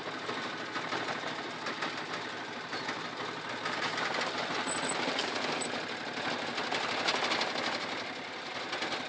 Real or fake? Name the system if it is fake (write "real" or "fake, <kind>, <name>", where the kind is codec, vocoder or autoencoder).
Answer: real